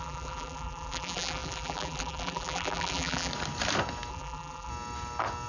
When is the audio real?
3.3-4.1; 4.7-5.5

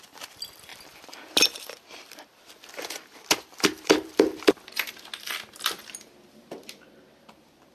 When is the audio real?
5.8-7.2

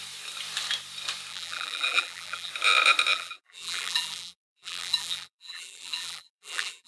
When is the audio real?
0.0-1.3; 2.5-3.1